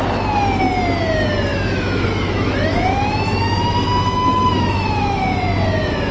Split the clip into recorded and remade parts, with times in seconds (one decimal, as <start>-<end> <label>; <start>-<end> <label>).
0.0-1.5 recorded; 1.5-5.2 remade; 5.2-6.1 recorded